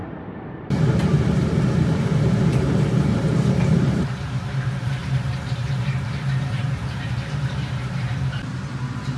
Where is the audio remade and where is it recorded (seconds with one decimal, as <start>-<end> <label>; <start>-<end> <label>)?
0.0-9.2 remade

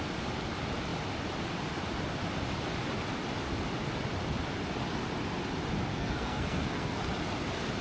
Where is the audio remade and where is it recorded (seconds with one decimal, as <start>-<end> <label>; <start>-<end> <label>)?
0.0-5.9 recorded; 5.9-7.0 remade; 7.0-7.8 recorded

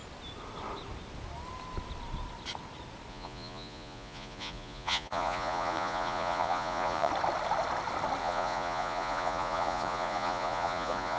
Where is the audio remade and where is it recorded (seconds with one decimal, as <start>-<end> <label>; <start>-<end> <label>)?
0.0-3.1 recorded; 3.1-7.1 remade; 7.1-8.2 recorded; 8.2-11.2 remade

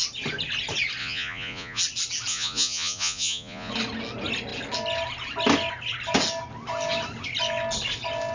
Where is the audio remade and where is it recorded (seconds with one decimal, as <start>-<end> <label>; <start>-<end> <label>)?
0.0-1.0 recorded; 1.0-1.8 remade; 1.8-2.3 recorded; 2.3-3.7 remade; 3.7-8.3 recorded

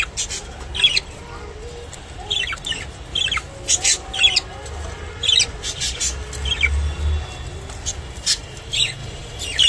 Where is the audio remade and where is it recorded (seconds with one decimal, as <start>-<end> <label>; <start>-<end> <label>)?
0.0-9.0 recorded; 9.0-9.7 remade

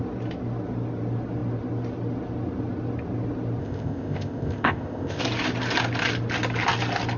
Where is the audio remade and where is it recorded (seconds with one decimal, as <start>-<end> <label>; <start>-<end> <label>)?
0.0-3.6 recorded; 3.6-5.2 remade; 5.2-7.2 recorded